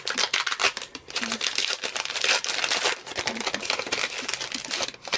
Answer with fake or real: real